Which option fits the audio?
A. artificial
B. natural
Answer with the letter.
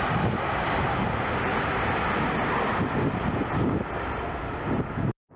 B